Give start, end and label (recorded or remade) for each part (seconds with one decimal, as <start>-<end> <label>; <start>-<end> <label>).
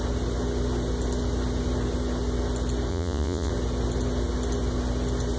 0.0-2.9 recorded; 2.9-3.5 remade; 3.5-5.4 recorded